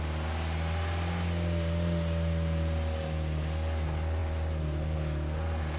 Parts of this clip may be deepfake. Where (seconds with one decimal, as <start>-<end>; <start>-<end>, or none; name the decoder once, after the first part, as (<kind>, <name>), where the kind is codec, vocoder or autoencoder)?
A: none